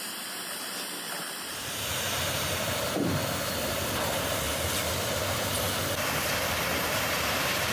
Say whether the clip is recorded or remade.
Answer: remade